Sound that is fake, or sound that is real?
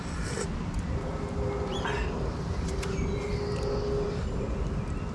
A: real